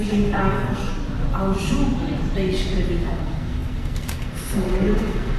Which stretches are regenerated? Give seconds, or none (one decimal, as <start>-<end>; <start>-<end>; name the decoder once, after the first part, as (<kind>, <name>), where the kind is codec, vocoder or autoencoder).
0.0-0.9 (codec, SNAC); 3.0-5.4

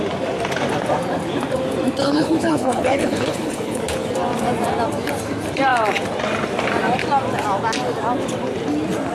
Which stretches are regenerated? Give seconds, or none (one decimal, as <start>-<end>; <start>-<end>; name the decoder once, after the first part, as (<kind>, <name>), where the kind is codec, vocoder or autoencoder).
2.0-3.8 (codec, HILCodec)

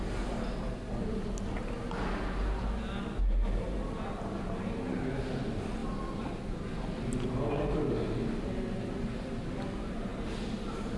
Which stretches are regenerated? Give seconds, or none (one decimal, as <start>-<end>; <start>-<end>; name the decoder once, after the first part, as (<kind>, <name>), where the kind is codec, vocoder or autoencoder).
none

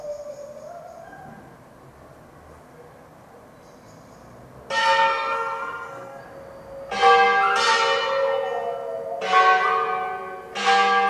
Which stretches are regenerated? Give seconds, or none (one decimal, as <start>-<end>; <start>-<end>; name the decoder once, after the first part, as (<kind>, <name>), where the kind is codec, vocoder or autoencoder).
4.8-6.2 (codec, SNAC)

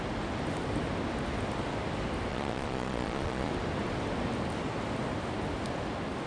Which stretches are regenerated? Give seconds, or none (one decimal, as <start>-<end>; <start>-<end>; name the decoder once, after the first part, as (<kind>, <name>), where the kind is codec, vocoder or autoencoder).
2.3-3.5 (vocoder, Vocos)

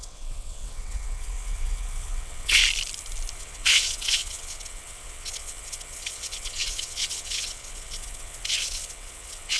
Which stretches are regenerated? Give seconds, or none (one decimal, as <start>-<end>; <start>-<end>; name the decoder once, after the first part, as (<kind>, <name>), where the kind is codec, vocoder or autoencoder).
0.0-2.6 (vocoder, WaveNeXt); 3.3-9.6